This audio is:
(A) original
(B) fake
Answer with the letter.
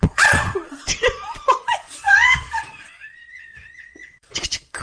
B